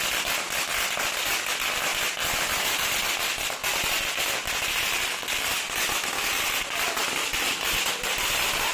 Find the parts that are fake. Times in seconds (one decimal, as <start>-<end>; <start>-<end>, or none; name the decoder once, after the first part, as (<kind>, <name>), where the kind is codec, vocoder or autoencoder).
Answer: none

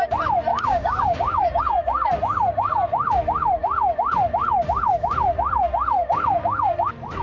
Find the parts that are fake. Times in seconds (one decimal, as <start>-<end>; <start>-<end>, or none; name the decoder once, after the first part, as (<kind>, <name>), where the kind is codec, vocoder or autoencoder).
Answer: 0.5-1.6 (codec, DAC); 6.0-6.7

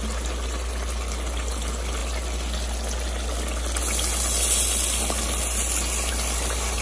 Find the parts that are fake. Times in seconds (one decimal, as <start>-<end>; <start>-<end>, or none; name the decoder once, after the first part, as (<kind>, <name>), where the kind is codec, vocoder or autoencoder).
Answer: none